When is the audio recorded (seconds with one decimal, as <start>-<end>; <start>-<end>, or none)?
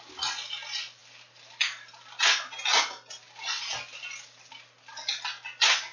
0.0-5.9